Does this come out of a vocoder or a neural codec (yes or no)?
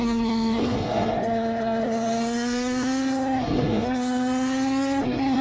yes